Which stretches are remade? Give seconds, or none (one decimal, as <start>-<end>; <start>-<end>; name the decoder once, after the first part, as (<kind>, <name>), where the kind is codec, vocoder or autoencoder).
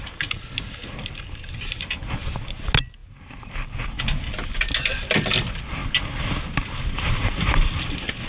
5.8-7.8 (vocoder, BigVGAN v2)